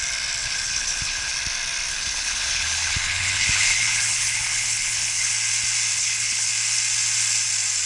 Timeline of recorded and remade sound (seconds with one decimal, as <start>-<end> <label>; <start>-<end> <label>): 0.0-0.4 recorded; 0.4-1.3 remade; 1.3-1.9 recorded; 1.9-5.3 remade; 5.3-5.9 recorded; 5.9-6.5 remade; 6.5-7.9 recorded